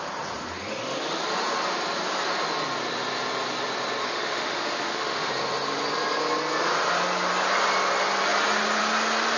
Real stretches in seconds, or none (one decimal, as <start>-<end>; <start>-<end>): 0.0-4.0; 5.3-9.4